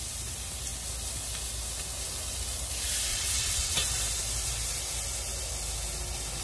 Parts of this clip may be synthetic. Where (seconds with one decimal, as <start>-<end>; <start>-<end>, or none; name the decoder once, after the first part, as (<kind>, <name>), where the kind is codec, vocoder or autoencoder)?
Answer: 3.1-3.7 (vocoder, WaveNeXt)